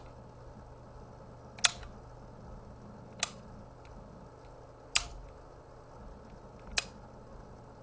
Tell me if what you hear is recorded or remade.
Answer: recorded